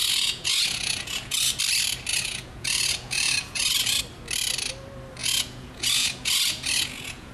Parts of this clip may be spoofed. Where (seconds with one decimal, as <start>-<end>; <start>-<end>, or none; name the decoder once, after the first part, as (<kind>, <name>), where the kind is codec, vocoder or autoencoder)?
0.0-1.6 (vocoder, Vocos); 2.1-4.0; 5.2-7.3